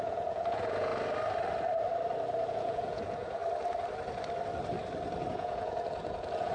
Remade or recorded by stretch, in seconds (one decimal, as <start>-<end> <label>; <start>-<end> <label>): 0.0-0.9 remade; 0.9-2.5 recorded; 2.5-3.4 remade; 3.4-5.3 recorded; 5.3-6.5 remade